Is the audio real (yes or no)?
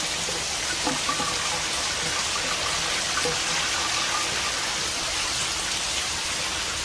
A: yes